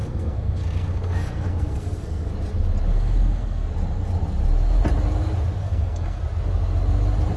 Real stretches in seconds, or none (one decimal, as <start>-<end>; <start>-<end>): 2.3-2.9; 3.7-5.6; 6.2-7.4